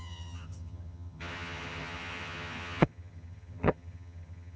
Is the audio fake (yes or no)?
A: yes